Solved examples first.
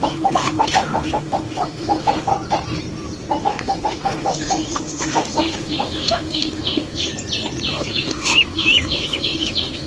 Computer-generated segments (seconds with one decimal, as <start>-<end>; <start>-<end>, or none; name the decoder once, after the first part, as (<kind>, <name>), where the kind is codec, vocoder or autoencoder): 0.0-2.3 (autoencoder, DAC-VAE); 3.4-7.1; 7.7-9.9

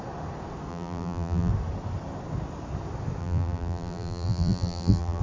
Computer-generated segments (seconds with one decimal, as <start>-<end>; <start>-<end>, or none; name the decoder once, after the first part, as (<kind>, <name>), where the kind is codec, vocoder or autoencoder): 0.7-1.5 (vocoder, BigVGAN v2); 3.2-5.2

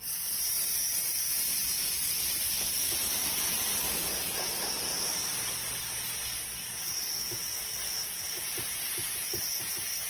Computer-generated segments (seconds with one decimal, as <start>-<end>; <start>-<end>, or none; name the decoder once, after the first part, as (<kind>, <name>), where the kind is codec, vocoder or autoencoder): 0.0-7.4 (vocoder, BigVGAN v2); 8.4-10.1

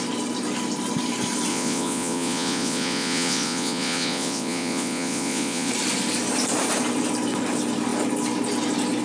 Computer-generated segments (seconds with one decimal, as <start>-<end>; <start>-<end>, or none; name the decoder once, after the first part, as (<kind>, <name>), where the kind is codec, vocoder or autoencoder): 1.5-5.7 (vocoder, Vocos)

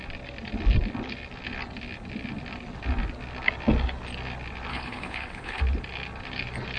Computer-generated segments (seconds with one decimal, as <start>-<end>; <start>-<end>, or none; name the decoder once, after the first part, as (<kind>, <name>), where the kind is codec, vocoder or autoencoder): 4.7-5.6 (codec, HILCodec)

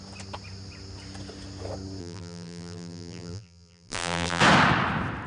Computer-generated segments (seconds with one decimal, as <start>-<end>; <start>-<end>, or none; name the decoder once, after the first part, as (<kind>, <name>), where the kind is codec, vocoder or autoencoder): 2.0-4.4 (vocoder, BigVGAN v2)

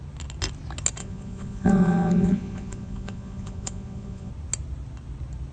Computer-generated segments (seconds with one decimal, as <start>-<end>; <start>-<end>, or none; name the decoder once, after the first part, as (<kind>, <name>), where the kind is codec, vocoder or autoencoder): 1.0-4.3 (vocoder, Vocos)

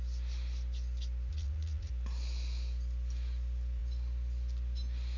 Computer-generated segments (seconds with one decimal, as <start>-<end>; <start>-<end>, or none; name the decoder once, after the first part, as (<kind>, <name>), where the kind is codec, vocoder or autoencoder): 1.3-1.9 (vocoder, Vocos)